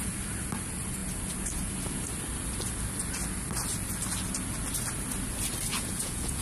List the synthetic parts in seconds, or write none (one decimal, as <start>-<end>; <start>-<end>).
5.7-6.4